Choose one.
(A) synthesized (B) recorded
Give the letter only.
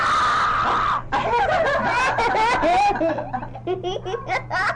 B